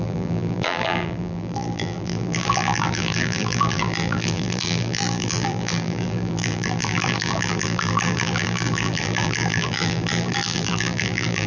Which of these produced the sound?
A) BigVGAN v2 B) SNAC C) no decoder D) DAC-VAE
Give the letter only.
A